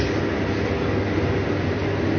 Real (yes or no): yes